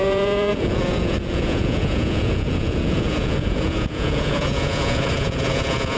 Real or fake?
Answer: fake